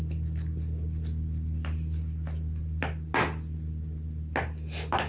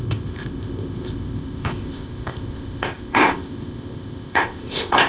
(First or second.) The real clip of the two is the first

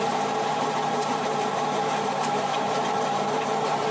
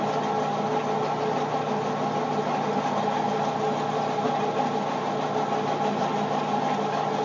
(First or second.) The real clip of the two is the second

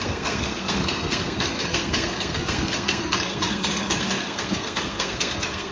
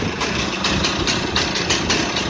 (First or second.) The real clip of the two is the second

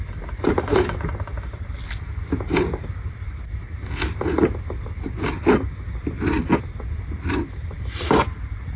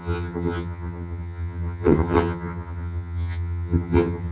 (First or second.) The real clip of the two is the first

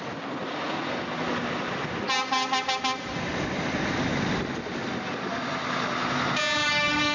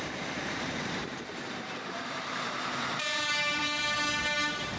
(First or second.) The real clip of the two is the first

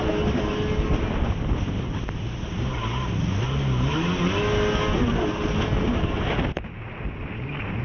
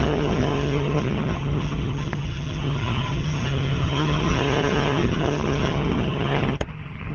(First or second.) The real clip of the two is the first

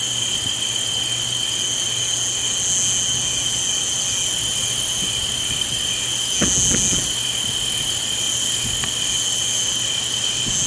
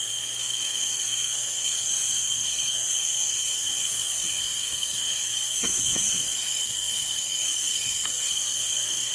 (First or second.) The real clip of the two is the first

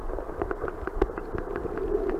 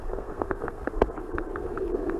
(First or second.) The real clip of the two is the first